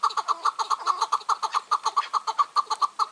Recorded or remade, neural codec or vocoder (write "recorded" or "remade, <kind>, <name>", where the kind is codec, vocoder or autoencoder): recorded